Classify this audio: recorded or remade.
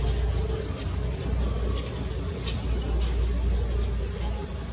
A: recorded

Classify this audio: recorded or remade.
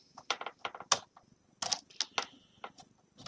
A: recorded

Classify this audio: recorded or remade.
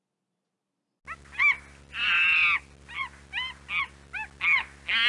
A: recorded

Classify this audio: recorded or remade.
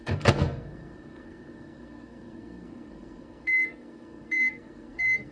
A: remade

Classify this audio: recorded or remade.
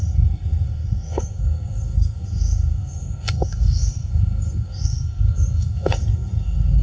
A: remade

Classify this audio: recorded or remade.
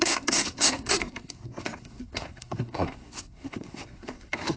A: remade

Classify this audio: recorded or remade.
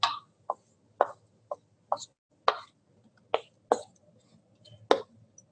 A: recorded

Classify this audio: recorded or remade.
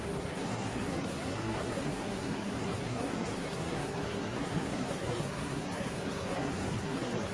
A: remade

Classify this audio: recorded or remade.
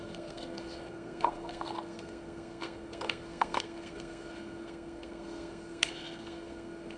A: remade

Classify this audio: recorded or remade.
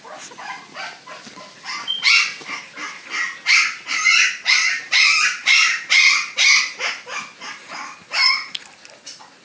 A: recorded